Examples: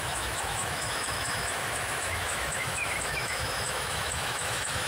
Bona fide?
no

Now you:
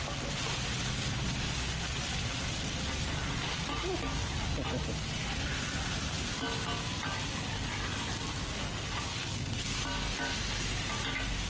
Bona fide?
yes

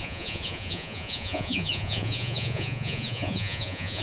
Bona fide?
no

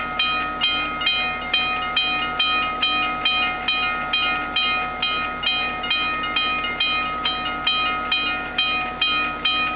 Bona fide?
yes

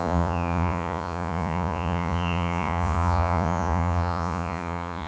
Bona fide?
no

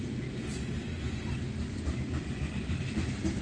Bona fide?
yes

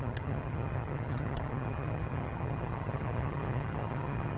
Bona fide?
no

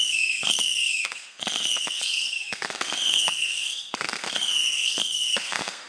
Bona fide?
no